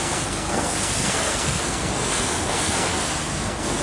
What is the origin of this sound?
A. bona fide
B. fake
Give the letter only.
B